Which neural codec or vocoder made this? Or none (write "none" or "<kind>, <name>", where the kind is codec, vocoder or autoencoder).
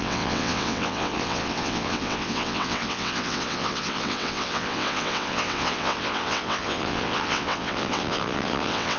vocoder, WaveNeXt